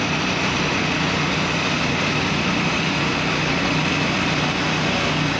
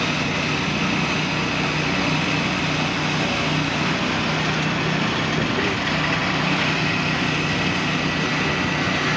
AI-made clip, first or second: first